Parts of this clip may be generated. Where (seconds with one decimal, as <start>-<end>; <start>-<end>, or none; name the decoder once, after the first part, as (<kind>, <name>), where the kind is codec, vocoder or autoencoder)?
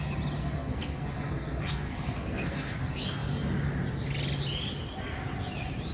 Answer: 0.4-2.8 (codec, SNAC)